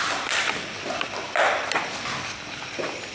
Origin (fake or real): real